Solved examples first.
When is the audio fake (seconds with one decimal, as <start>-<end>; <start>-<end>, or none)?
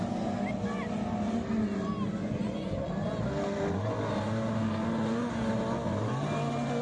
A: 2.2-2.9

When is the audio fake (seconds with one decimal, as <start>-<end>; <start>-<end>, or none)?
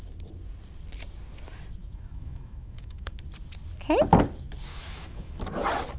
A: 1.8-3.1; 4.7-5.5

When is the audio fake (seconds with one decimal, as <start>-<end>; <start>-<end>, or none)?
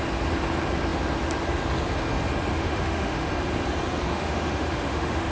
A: 2.5-3.3; 4.1-5.3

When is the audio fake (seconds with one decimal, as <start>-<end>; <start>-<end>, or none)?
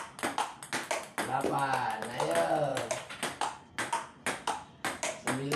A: 2.7-3.7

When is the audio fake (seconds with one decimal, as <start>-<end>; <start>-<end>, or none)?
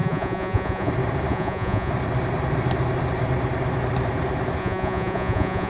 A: 0.0-0.9; 1.3-1.9; 4.6-5.7